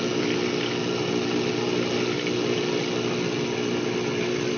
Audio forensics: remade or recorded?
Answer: recorded